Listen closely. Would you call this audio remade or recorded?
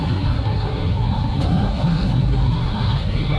remade